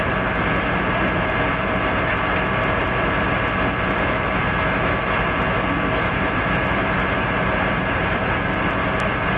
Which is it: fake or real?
real